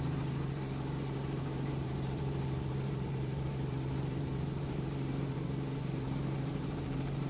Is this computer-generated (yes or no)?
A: yes